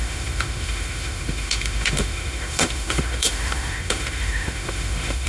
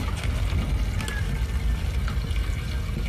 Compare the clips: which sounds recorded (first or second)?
second